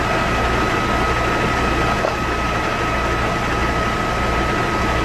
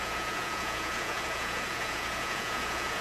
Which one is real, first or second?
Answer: first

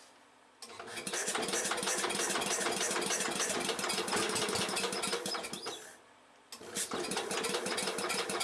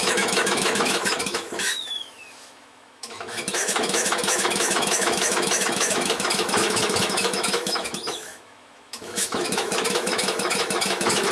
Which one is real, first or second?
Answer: first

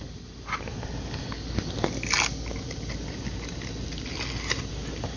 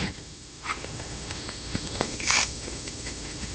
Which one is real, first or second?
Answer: first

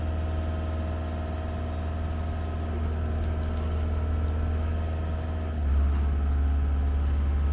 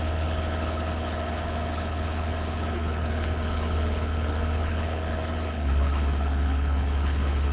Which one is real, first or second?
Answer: first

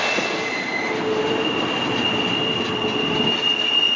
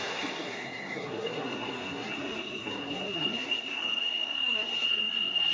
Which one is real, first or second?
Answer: first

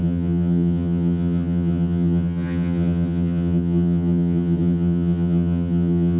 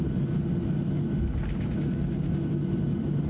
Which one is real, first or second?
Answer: second